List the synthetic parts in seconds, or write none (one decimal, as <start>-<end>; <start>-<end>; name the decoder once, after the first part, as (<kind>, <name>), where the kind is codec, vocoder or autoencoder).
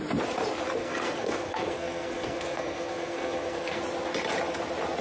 0.8-3.8 (codec, SNAC)